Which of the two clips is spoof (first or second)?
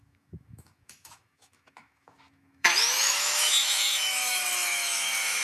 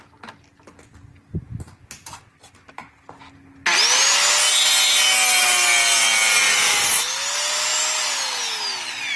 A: first